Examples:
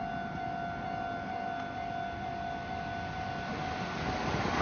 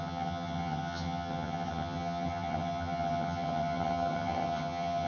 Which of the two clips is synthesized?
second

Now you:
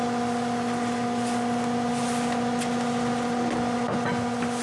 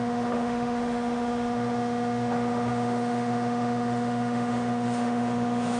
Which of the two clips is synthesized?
second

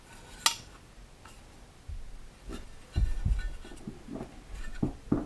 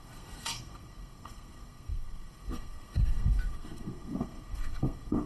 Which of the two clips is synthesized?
second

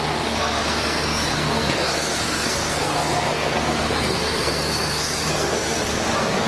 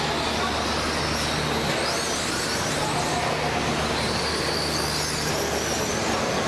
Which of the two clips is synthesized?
first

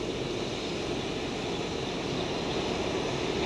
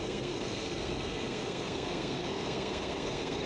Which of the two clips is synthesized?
second